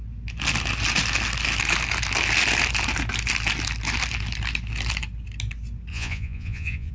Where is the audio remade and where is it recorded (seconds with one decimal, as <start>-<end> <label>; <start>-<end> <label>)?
0.0-5.9 recorded; 5.9-6.9 remade